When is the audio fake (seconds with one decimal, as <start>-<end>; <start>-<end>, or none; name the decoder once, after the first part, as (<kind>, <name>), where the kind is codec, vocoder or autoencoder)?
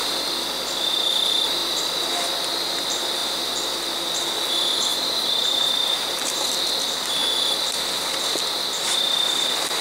4.9-6.3 (vocoder, BigVGAN v2)